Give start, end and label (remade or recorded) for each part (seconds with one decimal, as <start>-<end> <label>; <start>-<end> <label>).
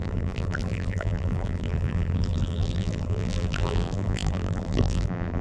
0.0-5.4 remade